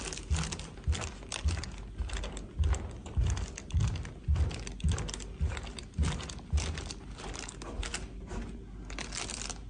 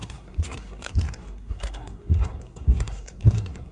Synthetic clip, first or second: second